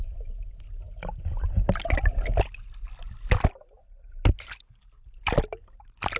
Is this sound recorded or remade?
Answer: recorded